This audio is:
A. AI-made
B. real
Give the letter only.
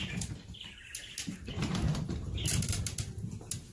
B